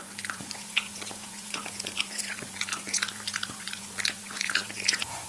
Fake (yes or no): yes